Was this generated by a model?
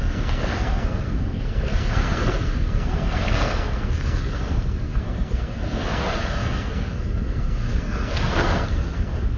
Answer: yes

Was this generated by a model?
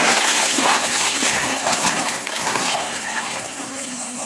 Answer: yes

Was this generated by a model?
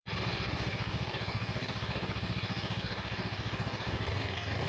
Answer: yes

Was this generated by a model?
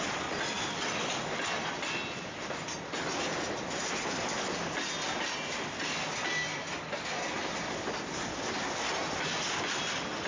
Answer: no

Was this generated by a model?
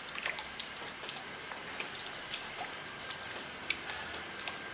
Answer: no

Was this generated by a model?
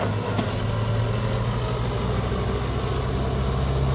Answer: no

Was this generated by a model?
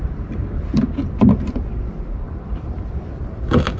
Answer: yes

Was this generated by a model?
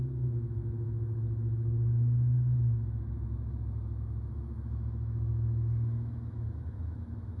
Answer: yes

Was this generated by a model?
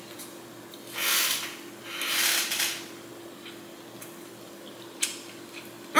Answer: no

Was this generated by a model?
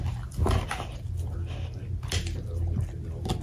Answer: no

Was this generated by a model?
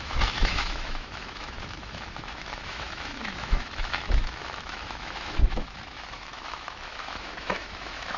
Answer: yes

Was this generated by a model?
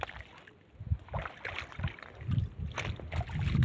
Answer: no